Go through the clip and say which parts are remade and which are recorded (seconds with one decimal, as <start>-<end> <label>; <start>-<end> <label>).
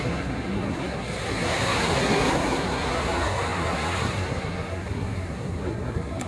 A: 0.0-6.3 remade